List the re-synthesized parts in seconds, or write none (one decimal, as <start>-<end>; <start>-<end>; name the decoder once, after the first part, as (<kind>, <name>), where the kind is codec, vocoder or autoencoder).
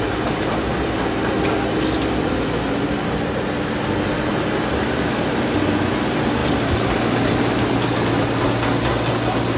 none